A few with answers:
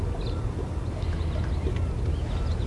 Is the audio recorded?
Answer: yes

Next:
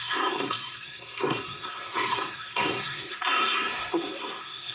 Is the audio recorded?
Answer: no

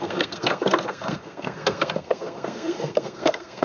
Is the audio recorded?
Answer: no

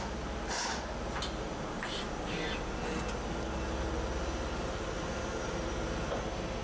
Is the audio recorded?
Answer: yes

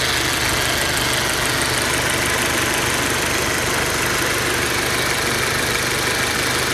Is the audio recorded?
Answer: yes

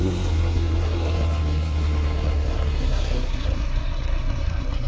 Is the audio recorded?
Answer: no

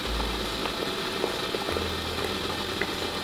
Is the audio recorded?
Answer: yes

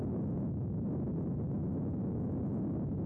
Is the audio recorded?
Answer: yes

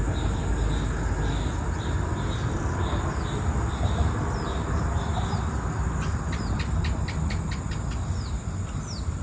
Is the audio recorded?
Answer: yes